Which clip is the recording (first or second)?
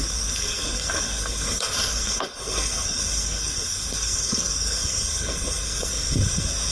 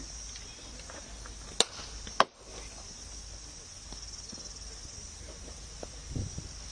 second